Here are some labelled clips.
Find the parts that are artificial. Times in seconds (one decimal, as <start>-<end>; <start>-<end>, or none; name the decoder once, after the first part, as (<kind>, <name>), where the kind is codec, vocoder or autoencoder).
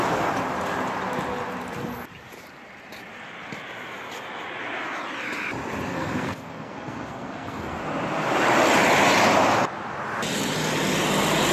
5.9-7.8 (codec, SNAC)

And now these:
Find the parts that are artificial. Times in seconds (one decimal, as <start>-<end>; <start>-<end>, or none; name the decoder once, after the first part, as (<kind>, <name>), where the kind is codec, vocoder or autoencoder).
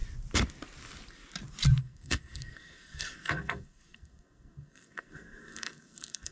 1.8-6.3 (codec, SNAC)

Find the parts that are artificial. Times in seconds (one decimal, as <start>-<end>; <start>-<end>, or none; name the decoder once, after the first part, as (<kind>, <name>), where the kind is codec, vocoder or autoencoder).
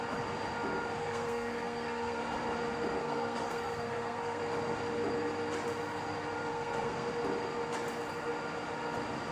1.0-2.2 (codec, SNAC); 3.0-4.4; 6.5-7.1